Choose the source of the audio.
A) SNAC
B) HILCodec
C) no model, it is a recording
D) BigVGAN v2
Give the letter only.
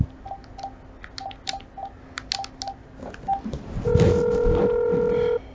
C